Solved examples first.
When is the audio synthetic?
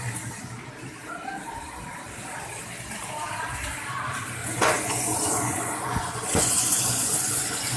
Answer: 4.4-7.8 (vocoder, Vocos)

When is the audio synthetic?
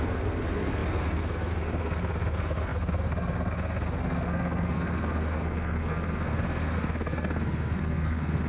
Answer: 0.0-8.5 (codec, SNAC)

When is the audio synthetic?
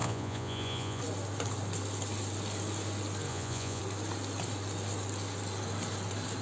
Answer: 0.0-1.0 (vocoder, Vocos); 3.3-3.8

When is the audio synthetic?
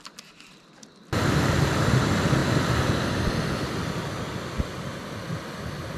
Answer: none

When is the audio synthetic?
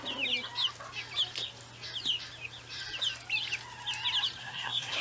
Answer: 4.4-5.0 (codec, SNAC)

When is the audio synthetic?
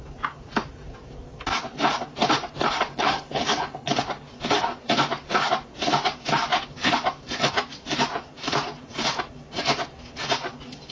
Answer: 2.9-4.0 (codec, HILCodec)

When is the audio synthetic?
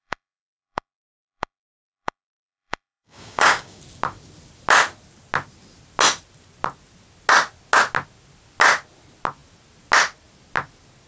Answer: 0.0-3.8 (codec, DAC)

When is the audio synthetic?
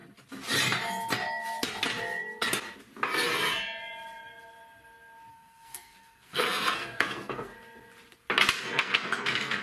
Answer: 5.3-7.5 (codec, SNAC); 8.6-9.6